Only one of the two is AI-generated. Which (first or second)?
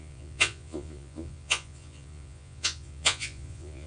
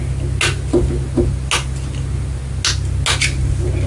first